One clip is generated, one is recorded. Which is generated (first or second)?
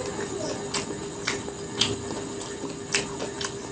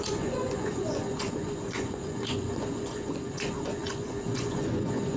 second